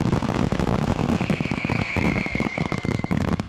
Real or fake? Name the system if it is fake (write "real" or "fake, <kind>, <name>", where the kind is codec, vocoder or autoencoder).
fake, codec, SNAC